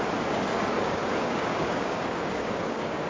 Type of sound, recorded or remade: remade